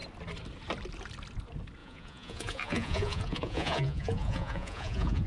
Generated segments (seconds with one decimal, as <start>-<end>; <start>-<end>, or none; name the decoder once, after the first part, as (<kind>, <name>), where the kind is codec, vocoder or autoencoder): 1.8-5.3 (vocoder, Vocos)

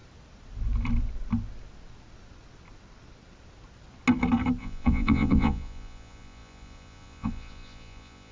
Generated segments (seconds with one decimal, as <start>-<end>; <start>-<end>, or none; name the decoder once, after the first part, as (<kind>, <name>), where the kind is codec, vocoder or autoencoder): 4.6-8.3 (vocoder, Vocos)

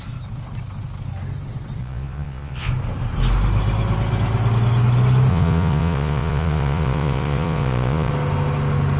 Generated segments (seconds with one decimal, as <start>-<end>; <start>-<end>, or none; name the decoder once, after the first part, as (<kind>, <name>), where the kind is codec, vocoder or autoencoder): 1.8-2.7 (vocoder, Vocos); 5.3-8.1